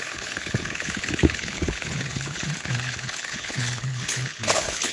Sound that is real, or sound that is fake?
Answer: fake